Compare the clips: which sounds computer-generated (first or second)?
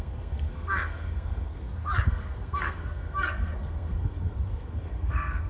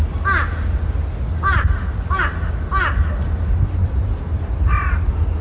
first